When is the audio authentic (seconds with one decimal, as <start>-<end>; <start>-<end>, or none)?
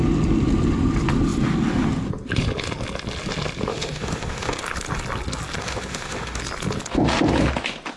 0.0-3.7; 4.6-5.6; 6.4-8.0